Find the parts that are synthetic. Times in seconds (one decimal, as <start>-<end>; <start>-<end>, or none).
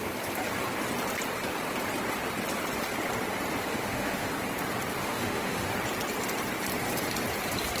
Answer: 3.7-4.3; 5.0-5.7